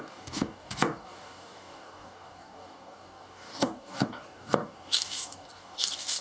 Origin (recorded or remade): remade